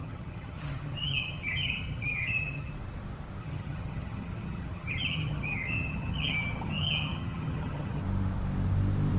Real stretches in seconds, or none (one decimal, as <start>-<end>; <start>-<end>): 2.7-3.4; 8.0-9.2